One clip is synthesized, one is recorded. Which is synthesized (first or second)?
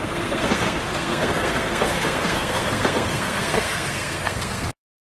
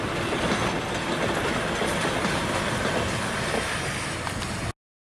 first